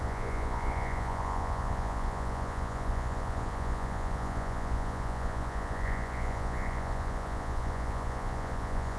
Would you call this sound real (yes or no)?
no